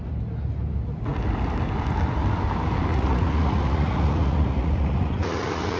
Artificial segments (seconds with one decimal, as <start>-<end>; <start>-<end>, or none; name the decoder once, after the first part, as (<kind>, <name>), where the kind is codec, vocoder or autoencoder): 2.9-5.8 (vocoder, Vocos)